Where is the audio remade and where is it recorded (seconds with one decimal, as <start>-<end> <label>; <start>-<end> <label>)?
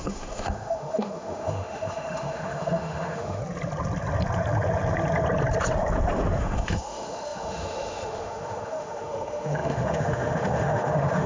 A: 0.0-3.4 remade; 3.4-6.4 recorded; 6.4-11.3 remade